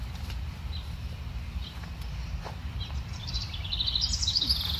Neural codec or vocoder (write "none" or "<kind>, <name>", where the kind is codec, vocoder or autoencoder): vocoder, BigVGAN v2